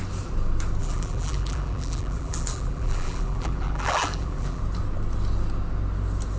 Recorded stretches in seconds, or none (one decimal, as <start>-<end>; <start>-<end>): 0.0-0.8; 4.6-6.4